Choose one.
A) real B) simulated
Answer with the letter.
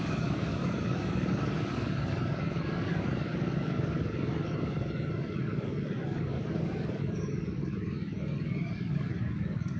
B